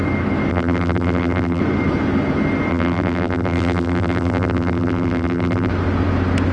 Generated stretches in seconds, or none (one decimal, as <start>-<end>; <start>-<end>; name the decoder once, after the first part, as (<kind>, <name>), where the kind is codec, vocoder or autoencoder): 0.5-1.6 (vocoder, BigVGAN v2); 2.7-5.7